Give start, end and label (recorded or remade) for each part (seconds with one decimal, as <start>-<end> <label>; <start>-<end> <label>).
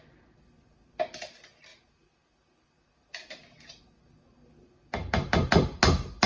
0.0-6.3 recorded